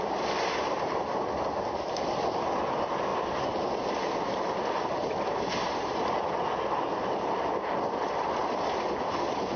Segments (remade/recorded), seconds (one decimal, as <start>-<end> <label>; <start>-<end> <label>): 0.0-9.6 recorded